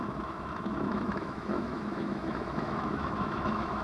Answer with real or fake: fake